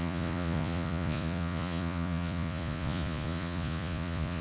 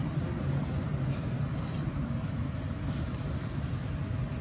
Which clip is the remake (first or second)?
first